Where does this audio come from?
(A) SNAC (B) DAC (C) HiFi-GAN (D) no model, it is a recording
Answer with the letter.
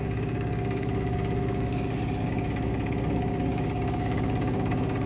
B